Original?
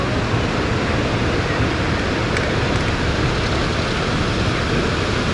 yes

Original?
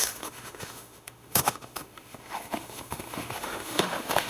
no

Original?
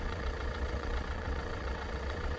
no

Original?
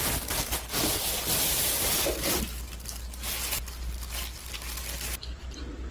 yes